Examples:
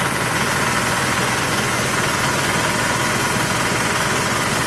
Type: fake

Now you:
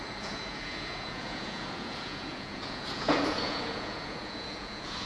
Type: fake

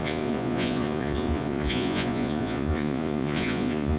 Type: fake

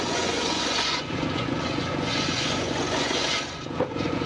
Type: fake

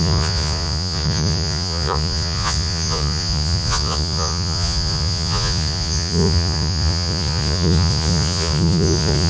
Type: fake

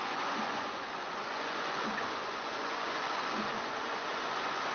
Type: fake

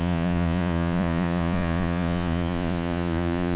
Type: fake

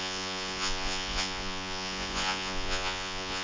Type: fake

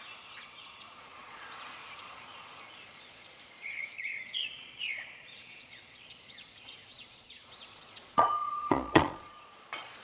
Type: fake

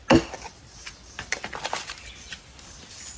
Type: real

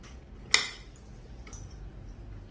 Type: real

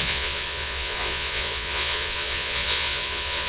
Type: fake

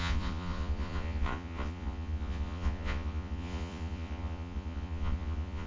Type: fake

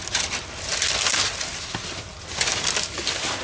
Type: real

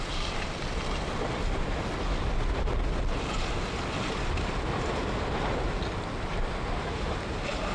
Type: real